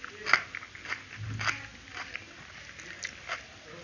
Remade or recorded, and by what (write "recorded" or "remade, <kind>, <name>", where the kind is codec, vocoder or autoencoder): recorded